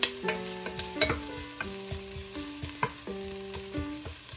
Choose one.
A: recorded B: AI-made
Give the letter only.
A